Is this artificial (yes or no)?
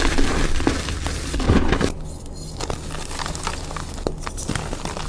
no